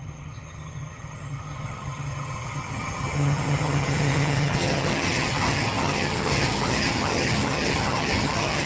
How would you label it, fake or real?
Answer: fake